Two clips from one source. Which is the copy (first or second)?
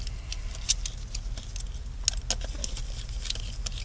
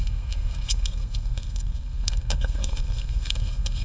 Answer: second